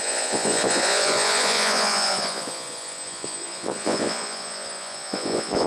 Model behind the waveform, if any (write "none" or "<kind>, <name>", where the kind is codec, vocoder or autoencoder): vocoder, Vocos